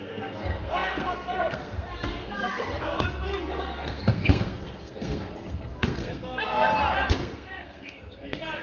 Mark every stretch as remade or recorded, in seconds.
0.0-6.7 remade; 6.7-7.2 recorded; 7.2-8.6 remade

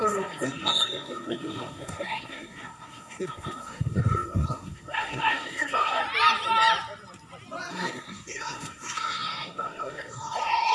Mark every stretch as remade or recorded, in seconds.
0.0-6.0 remade; 6.0-7.7 recorded; 7.7-10.7 remade

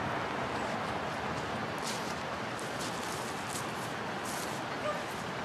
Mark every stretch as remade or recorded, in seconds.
0.0-5.4 recorded

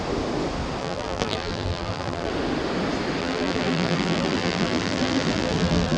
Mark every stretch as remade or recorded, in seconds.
0.0-0.8 recorded; 0.8-2.3 remade; 2.3-3.2 recorded; 3.2-6.0 remade

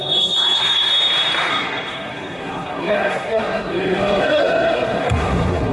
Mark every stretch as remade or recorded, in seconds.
0.0-0.9 remade; 0.9-1.5 recorded; 1.5-5.7 remade

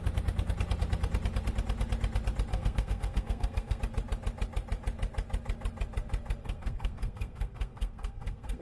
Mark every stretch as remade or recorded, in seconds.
0.0-2.5 recorded; 2.5-3.8 remade; 3.8-6.4 recorded; 6.4-8.6 remade